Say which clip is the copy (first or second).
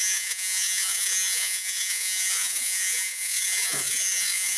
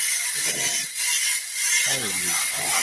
first